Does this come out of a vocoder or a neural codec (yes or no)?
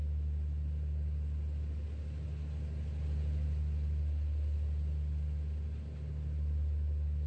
no